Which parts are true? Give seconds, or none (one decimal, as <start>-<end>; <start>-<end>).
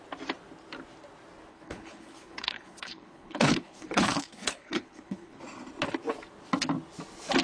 0.0-1.5; 5.4-7.4